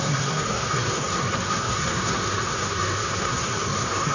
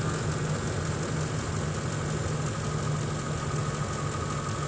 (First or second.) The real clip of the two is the second